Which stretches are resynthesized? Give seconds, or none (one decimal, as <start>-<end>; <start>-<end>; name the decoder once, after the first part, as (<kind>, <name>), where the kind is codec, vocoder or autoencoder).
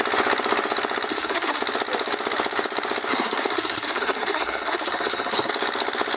1.1-1.6 (codec, SNAC); 3.1-5.5